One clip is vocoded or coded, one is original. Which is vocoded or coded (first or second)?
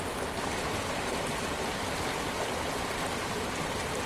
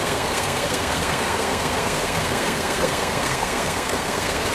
second